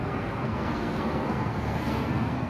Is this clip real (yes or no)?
no